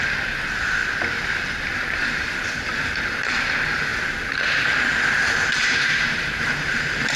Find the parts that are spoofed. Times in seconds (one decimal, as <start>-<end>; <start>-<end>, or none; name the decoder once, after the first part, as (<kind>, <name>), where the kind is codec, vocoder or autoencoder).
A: 0.0-0.8 (vocoder, BigVGAN v2); 1.6-3.9; 5.5-7.2